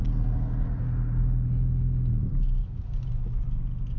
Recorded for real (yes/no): yes